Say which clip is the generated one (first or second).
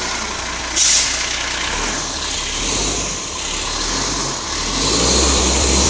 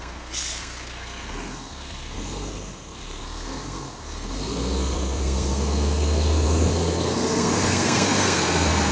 second